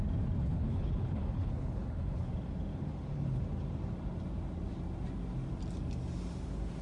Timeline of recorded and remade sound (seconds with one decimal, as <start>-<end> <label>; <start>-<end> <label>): 0.0-0.4 recorded; 0.4-2.3 remade; 2.3-2.7 recorded; 2.7-3.4 remade; 3.4-6.8 recorded